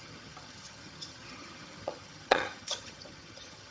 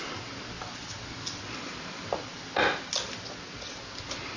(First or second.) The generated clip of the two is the first